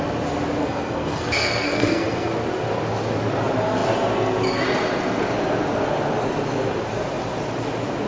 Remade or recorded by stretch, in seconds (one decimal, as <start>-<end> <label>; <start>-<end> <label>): 0.0-0.6 recorded; 0.6-2.3 remade; 2.3-8.1 recorded